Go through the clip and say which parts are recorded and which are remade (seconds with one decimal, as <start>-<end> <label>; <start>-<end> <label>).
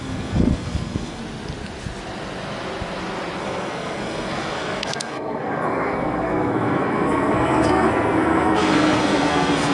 0.0-1.2 remade; 1.2-3.4 recorded; 3.4-9.7 remade